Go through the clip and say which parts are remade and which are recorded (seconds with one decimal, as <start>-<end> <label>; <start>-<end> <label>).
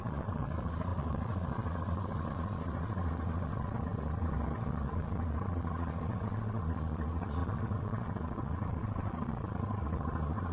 0.0-10.5 remade